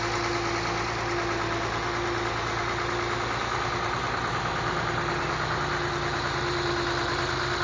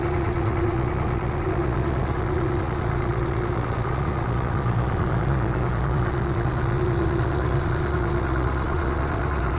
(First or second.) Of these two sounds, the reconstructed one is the second